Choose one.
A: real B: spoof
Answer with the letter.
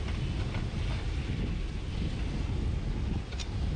A